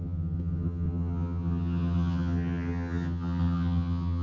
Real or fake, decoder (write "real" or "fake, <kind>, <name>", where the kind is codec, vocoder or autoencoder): fake, vocoder, HiFi-GAN